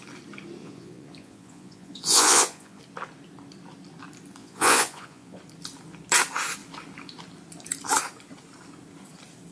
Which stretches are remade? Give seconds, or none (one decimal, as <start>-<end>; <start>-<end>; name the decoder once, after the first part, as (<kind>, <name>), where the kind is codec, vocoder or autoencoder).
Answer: 0.6-2.8 (vocoder, Vocos); 4.4-5.4